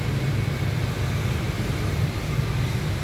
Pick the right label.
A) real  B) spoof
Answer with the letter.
A